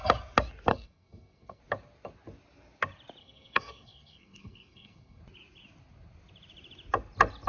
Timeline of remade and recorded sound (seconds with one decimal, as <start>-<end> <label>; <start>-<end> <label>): 0.0-0.7 recorded; 0.7-1.6 remade; 1.6-3.2 recorded; 3.2-5.2 remade; 5.2-7.5 recorded